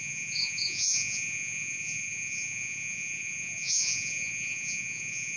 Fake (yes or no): yes